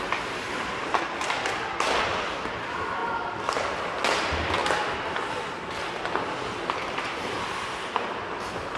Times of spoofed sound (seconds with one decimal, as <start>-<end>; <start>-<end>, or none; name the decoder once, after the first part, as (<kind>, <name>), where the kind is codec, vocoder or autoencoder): none